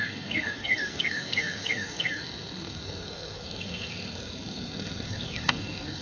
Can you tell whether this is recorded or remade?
remade